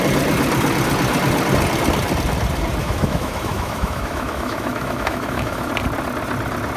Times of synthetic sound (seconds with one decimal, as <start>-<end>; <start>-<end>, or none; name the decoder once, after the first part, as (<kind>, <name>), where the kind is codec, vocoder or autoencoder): 2.8-5.7 (autoencoder, DAC-VAE)